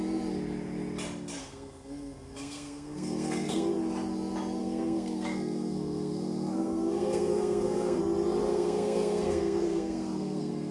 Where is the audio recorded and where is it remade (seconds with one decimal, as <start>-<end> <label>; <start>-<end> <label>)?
0.0-1.4 recorded; 1.4-3.7 remade; 3.7-4.6 recorded; 4.6-8.0 remade; 8.0-8.5 recorded; 8.5-10.7 remade

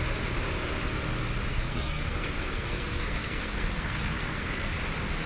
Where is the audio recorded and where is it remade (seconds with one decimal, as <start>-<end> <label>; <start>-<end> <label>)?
0.0-1.5 recorded; 1.5-4.7 remade; 4.7-5.3 recorded

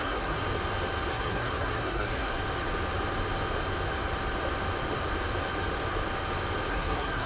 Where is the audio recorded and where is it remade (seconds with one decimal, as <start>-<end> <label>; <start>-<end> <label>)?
0.0-0.4 remade; 0.4-1.1 recorded; 1.1-2.3 remade; 2.3-6.7 recorded; 6.7-7.3 remade

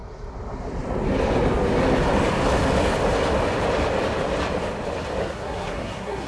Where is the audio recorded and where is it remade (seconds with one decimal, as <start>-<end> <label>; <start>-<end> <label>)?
0.0-5.2 recorded; 5.2-6.3 remade

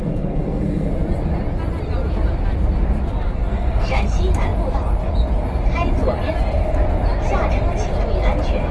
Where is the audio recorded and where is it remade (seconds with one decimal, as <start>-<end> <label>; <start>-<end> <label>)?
0.0-0.9 remade; 0.9-3.5 recorded; 3.5-4.0 remade; 4.0-8.7 recorded

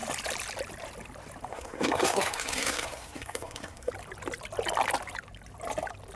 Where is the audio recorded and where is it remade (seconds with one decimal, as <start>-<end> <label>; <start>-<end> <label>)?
0.0-1.5 recorded; 1.5-3.9 remade; 3.9-6.2 recorded